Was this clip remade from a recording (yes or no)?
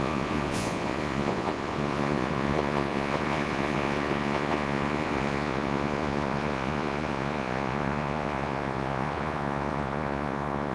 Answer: yes